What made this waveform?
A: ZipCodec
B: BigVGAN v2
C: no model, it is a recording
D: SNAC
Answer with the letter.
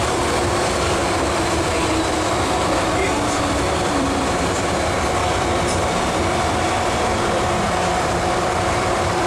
B